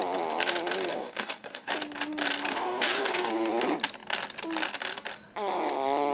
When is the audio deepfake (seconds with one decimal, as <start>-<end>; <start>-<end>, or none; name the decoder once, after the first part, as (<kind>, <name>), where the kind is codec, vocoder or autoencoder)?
0.9-1.7 (codec, DAC); 2.5-3.3